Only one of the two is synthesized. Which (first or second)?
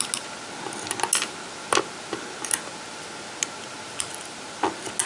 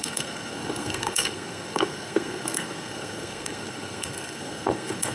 second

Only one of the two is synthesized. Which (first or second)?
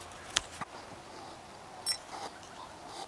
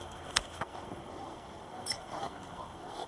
second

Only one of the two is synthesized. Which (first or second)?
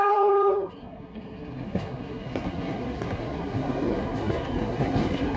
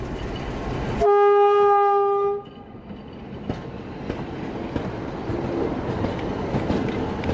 first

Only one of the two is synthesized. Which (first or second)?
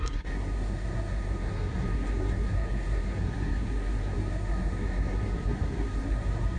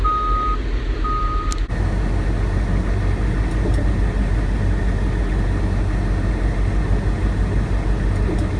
first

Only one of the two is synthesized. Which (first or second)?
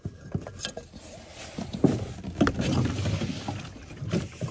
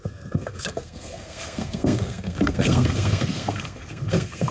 second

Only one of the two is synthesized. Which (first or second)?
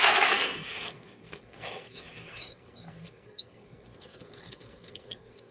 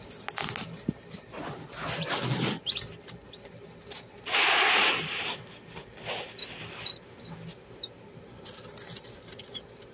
first